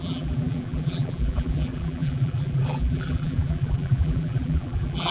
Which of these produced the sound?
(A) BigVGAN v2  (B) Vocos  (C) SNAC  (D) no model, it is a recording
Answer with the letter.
A